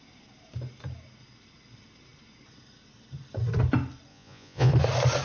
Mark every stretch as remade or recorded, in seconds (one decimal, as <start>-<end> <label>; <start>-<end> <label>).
0.0-4.1 recorded; 4.1-4.7 remade; 4.7-5.2 recorded